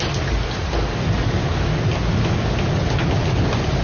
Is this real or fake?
real